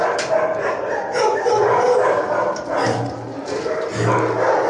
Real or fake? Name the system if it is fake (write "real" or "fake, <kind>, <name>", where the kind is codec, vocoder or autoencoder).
real